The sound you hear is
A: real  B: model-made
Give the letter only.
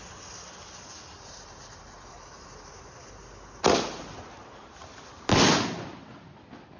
A